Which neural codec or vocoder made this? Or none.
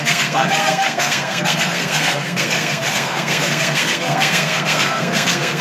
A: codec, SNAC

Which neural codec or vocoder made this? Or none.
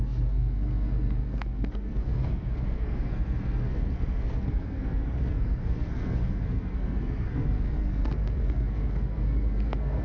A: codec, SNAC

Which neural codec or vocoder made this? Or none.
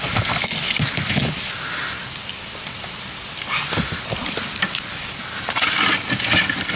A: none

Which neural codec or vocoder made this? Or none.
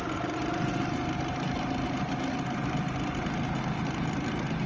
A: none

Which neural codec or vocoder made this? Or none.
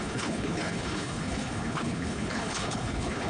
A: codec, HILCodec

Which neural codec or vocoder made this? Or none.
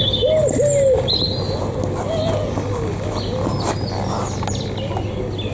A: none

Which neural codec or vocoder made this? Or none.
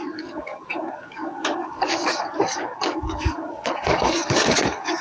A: codec, DAC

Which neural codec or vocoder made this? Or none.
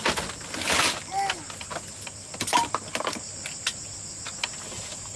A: none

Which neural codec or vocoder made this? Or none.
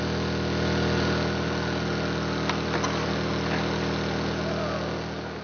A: none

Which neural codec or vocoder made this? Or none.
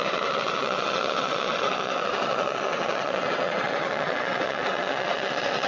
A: vocoder, WaveNeXt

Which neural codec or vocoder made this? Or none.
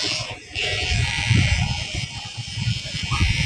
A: vocoder, BigVGAN v2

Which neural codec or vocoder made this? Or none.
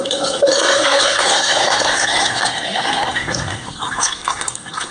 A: codec, SNAC